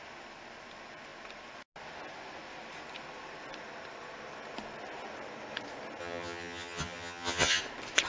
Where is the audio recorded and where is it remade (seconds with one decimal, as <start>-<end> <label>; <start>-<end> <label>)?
0.0-6.0 recorded; 6.0-7.6 remade; 7.6-8.1 recorded